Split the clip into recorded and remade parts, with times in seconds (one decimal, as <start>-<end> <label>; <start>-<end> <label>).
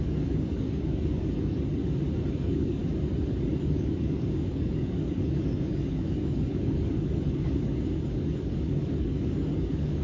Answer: 0.0-1.8 remade; 1.8-2.3 recorded; 2.3-2.8 remade; 2.8-3.6 recorded; 3.6-10.0 remade